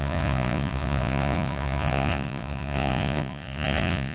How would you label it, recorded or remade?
remade